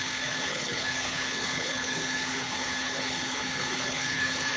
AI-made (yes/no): yes